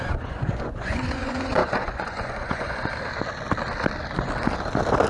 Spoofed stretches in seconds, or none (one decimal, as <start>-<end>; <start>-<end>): 0.0-2.9

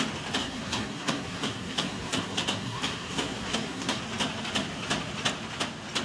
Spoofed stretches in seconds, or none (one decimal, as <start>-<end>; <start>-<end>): 0.4-4.0

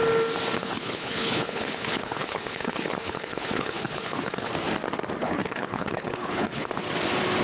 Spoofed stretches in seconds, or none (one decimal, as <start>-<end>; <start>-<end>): 0.6-4.5; 5.2-6.7

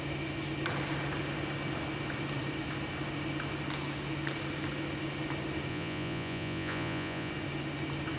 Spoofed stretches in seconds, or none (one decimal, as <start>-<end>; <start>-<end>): 5.7-7.3

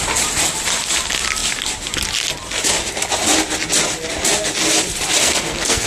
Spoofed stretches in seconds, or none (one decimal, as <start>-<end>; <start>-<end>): 5.2-5.9